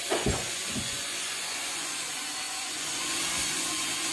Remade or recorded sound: remade